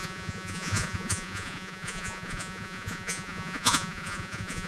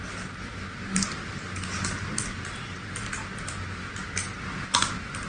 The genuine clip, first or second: second